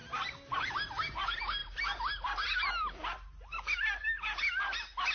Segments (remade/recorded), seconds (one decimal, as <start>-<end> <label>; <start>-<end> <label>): 0.0-5.1 recorded